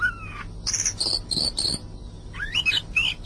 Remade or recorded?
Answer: recorded